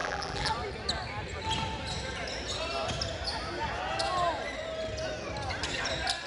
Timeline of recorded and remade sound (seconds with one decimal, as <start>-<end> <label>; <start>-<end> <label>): 0.0-0.5 remade; 0.5-6.3 recorded